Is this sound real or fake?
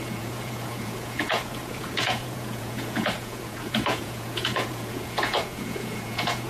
fake